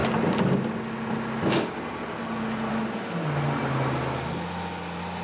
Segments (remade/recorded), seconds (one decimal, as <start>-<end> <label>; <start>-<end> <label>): 0.0-5.2 recorded